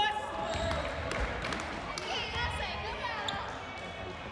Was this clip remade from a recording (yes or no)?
no